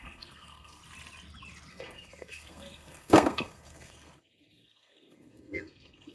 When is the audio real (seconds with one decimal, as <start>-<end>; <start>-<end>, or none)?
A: 0.8-1.7